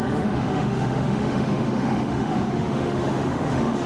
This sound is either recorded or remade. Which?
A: remade